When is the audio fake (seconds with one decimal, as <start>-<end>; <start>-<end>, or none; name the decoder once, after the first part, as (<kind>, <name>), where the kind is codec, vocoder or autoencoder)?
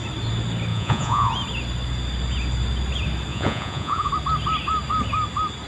0.7-1.3 (vocoder, Vocos); 3.3-4.1